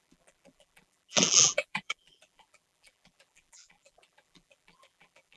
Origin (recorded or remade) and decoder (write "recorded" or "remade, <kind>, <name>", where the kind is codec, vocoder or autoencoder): remade, vocoder, BigVGAN v2